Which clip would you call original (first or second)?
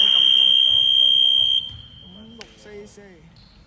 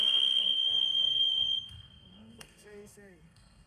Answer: first